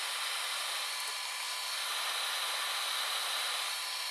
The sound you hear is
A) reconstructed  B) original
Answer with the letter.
B